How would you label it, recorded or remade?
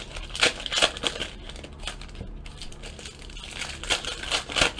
recorded